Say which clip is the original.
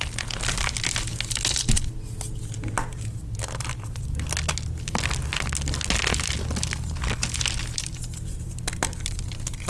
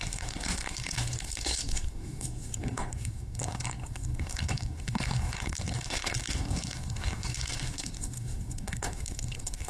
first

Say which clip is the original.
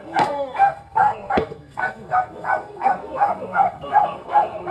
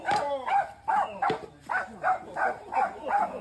second